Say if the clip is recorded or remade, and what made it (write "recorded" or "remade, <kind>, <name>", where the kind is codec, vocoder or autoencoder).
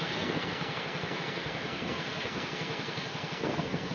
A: remade, codec, SNAC